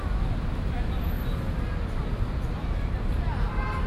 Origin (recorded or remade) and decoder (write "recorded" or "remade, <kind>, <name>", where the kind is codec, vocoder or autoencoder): recorded